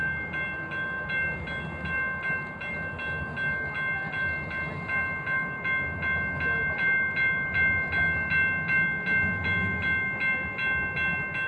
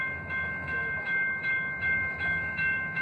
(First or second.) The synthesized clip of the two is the second